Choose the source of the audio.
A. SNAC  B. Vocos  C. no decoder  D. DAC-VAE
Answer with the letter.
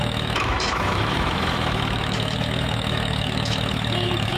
D